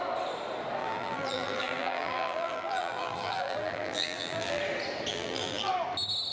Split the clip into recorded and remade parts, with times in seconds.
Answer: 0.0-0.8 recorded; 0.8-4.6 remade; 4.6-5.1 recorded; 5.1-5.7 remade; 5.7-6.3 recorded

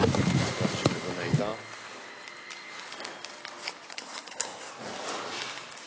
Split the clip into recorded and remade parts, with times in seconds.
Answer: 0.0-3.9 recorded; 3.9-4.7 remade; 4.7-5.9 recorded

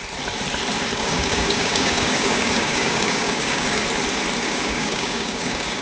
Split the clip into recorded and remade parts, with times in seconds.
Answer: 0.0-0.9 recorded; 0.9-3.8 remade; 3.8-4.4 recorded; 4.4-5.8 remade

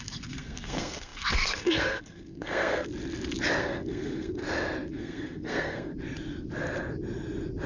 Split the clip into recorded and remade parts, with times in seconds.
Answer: 0.0-2.9 remade; 2.9-3.6 recorded; 3.6-4.4 remade; 4.4-4.9 recorded; 4.9-5.9 remade; 5.9-7.7 recorded

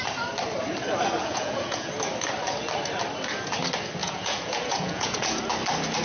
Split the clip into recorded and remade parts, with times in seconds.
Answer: 0.0-1.2 recorded; 1.2-1.9 remade; 1.9-4.0 recorded; 4.0-5.4 remade; 5.4-6.0 recorded

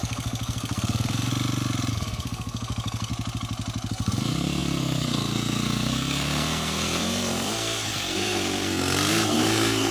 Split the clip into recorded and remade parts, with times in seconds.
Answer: 0.0-1.3 remade; 1.3-1.9 recorded; 1.9-3.1 remade; 3.1-3.9 recorded; 3.9-9.9 remade